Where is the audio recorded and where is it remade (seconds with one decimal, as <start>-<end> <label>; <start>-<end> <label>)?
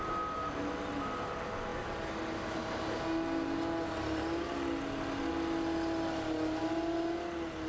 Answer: 0.0-7.7 recorded